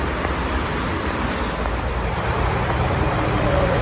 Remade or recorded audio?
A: remade